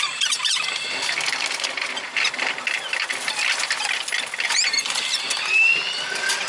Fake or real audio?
real